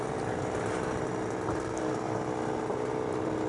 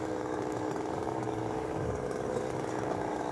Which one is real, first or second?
first